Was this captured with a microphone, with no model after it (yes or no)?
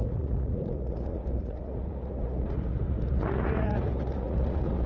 no